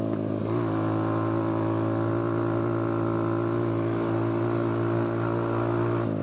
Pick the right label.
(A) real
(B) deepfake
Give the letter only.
A